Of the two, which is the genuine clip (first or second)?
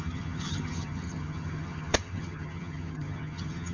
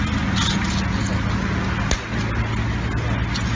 second